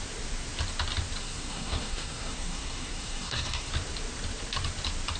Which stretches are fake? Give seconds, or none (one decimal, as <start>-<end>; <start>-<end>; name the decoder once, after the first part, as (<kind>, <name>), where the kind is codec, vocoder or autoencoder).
1.2-3.7 (codec, SNAC)